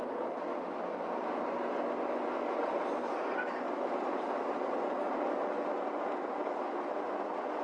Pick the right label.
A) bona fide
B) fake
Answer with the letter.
A